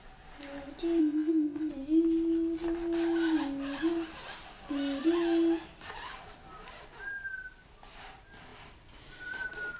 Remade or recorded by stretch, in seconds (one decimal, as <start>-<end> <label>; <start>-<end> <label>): 0.0-1.0 recorded; 1.0-1.7 remade; 1.7-9.8 recorded